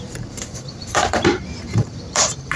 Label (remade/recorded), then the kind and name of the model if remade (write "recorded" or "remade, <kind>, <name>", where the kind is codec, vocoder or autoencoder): remade, vocoder, BigVGAN v2